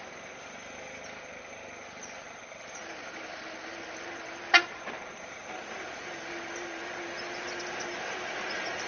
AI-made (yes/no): no